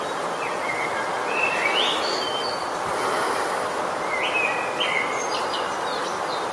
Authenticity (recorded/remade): remade